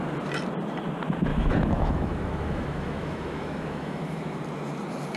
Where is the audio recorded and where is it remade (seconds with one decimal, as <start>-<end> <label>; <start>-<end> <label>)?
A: 0.0-1.3 recorded; 1.3-4.4 remade; 4.4-5.2 recorded